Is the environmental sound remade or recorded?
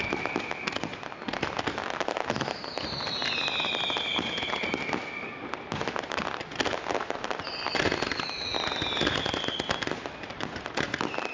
recorded